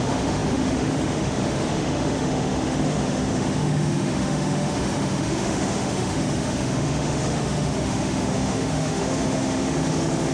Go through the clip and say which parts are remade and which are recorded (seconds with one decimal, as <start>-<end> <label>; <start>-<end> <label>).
0.0-10.3 remade